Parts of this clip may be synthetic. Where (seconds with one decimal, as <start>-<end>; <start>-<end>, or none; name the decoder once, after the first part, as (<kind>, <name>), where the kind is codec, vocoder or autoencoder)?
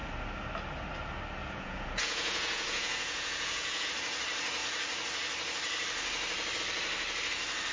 1.4-3.9 (vocoder, Vocos)